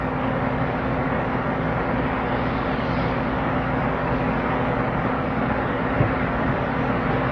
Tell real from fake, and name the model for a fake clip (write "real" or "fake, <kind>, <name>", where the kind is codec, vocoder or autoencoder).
fake, codec, DAC